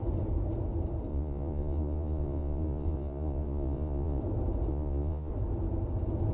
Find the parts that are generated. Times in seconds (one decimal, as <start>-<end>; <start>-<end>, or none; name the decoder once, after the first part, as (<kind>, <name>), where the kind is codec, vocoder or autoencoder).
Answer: 1.1-4.2 (vocoder, Vocos); 4.7-5.3